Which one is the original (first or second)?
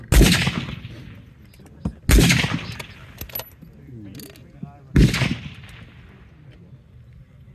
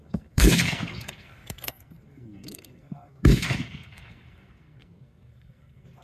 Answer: first